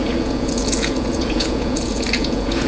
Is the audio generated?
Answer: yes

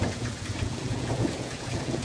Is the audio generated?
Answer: yes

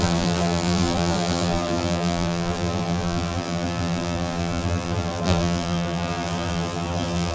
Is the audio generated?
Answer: yes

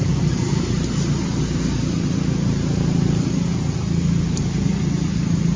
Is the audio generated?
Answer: no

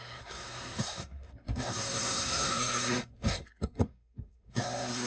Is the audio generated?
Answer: yes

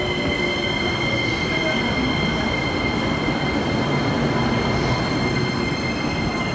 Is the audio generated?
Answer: no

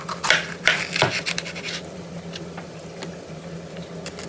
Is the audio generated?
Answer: no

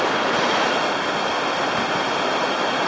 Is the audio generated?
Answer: no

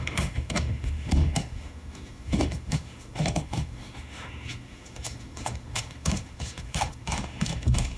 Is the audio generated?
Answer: yes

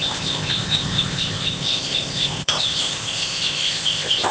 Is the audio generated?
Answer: yes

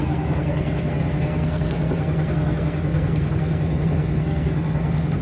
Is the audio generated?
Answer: yes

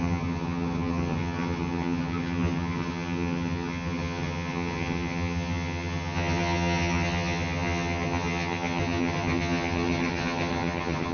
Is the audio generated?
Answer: yes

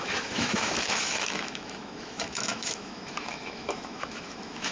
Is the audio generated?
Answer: yes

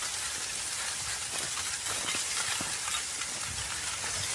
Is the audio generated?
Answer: no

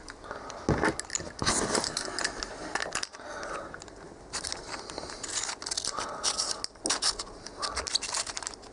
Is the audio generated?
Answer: no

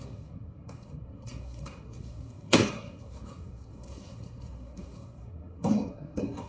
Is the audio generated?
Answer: yes